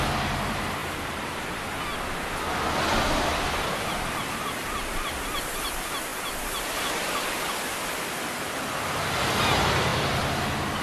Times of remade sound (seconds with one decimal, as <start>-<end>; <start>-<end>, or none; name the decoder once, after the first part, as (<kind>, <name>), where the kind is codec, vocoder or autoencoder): none